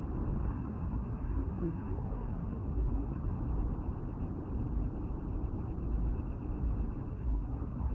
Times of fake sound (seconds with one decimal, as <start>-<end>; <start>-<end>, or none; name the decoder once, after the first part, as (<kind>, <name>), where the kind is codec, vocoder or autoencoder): 0.4-3.4 (codec, SNAC); 7.1-7.9